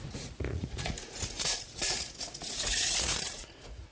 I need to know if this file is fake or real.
fake